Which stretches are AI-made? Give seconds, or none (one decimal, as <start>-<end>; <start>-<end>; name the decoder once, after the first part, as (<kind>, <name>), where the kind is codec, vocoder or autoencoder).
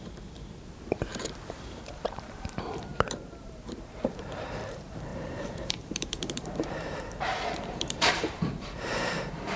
0.0-9.6 (vocoder, BigVGAN v2)